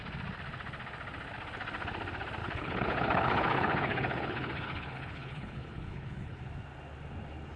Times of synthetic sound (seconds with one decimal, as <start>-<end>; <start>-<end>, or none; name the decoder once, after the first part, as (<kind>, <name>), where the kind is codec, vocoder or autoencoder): 2.4-6.4 (codec, HILCodec)